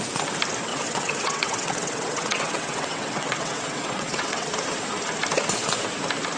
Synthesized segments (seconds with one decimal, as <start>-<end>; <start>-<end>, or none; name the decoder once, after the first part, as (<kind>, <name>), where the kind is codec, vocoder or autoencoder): 0.7-4.5 (vocoder, WaveNeXt)